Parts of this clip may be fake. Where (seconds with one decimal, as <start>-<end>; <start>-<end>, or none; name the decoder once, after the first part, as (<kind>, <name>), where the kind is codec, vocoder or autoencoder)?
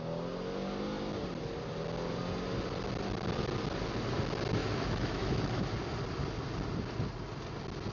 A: 4.6-5.7 (autoencoder, DAC-VAE)